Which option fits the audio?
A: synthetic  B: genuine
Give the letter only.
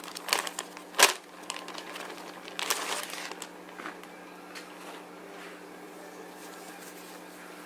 B